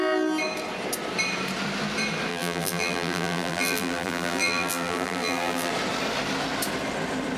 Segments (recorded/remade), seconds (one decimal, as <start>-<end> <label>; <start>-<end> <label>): 0.0-2.3 recorded; 2.3-5.7 remade; 5.7-7.4 recorded